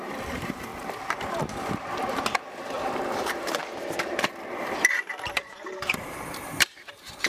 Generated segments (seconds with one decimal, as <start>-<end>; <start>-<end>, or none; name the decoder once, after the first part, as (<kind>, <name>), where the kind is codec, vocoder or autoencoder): 0.0-0.7 (vocoder, BigVGAN v2); 2.5-3.6; 4.5-7.3